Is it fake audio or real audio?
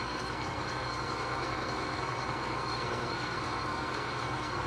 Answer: fake